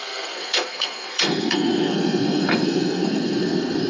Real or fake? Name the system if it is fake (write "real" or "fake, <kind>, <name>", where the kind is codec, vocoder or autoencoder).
fake, codec, SNAC